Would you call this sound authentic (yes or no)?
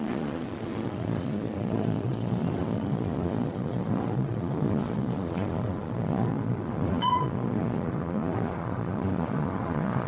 no